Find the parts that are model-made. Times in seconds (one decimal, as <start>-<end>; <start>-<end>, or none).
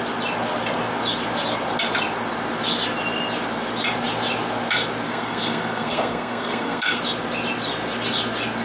5.1-7.0